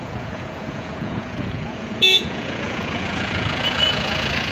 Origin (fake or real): fake